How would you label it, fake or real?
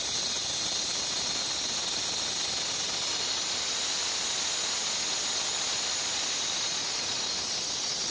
real